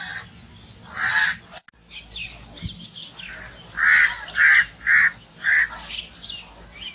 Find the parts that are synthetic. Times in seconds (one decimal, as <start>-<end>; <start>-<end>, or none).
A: none